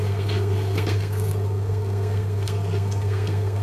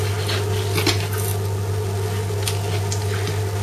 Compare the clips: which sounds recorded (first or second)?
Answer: second